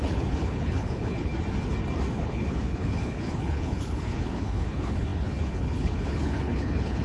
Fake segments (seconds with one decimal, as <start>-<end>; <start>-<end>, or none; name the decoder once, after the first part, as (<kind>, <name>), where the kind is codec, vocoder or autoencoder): 0.0-1.3 (codec, HILCodec); 2.1-7.0